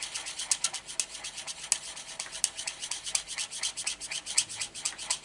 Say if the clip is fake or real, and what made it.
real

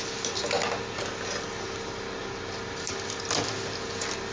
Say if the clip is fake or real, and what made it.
real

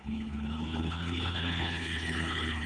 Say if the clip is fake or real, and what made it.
fake, codec, HILCodec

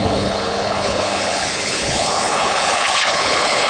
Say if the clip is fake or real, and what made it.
fake, codec, HILCodec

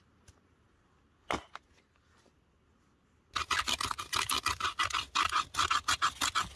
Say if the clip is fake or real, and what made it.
real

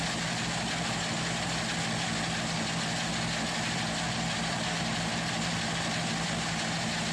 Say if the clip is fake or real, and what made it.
real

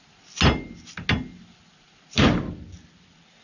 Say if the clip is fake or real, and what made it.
real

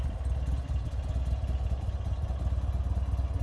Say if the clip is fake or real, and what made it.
real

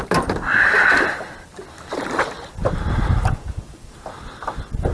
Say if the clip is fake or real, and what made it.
real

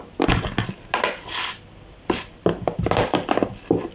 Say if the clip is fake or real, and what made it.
real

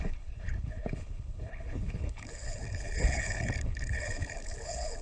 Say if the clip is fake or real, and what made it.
fake, codec, HILCodec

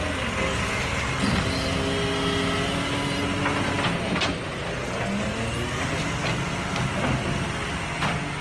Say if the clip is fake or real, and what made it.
real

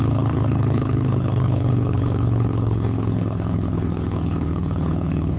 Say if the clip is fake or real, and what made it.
fake, codec, HILCodec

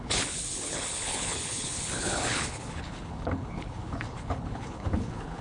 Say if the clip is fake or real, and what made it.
fake, codec, HILCodec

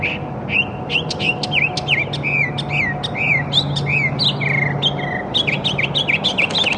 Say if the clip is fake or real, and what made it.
real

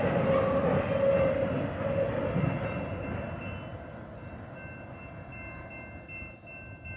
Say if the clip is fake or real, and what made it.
real